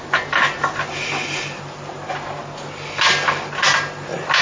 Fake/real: real